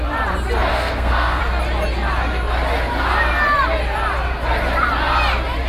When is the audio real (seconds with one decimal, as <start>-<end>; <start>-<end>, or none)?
0.0-0.7; 1.4-5.7